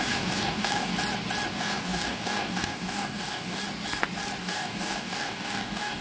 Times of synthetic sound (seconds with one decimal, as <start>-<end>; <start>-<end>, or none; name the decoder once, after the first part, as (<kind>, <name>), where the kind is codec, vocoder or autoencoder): 0.0-0.9 (codec, DAC); 1.5-3.6; 4.4-6.0